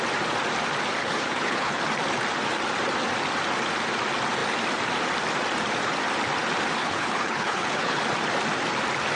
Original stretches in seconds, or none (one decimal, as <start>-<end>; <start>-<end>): 0.0-1.0; 1.8-6.8; 8.0-9.2